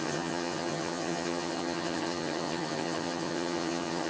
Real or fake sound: fake